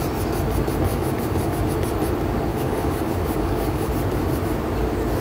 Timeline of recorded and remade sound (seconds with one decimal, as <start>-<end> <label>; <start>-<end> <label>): 0.0-0.9 recorded; 0.9-1.6 remade; 1.6-2.5 recorded; 2.5-3.9 remade; 3.9-5.2 recorded